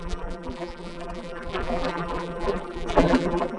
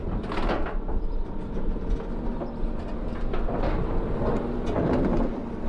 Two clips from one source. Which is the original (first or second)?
second